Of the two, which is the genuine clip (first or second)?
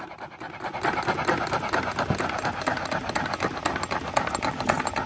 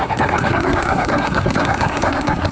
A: first